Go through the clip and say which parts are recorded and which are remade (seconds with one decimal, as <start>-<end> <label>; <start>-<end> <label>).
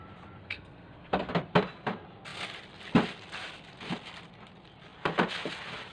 0.0-0.4 recorded; 0.4-1.3 remade; 1.3-5.9 recorded